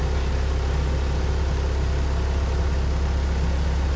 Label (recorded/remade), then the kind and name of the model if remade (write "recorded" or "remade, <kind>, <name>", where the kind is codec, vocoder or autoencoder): recorded